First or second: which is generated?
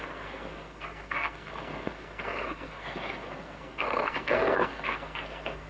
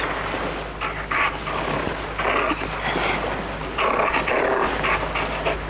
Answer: first